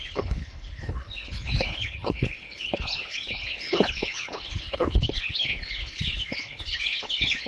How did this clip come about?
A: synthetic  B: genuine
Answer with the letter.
A